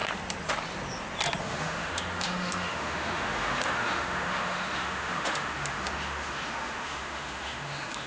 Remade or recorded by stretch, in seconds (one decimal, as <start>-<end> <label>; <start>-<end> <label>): 0.0-1.4 recorded; 1.4-8.1 remade